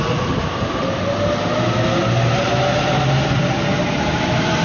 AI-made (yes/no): no